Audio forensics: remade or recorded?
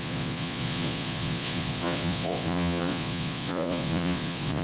remade